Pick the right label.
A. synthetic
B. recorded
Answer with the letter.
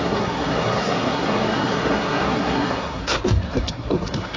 A